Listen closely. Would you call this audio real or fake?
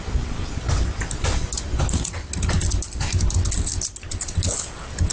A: real